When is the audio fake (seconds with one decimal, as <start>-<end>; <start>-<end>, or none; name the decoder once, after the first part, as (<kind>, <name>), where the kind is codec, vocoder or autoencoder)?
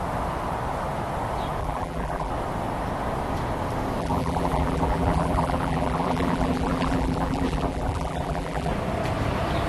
1.6-2.3 (vocoder, BigVGAN v2); 4.0-8.7